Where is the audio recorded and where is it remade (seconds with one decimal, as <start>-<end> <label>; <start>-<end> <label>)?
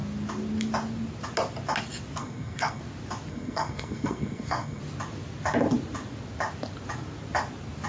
0.0-2.2 recorded; 2.2-2.8 remade; 2.8-3.3 recorded; 3.3-4.8 remade; 4.8-7.9 recorded